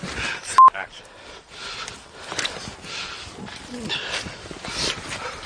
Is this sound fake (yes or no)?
no